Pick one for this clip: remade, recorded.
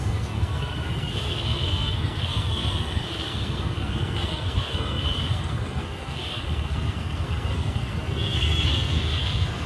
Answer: remade